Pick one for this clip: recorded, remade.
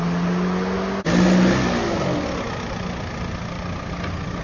recorded